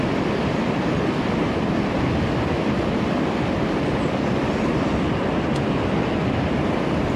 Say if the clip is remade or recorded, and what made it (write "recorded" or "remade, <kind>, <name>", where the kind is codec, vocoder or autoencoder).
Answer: recorded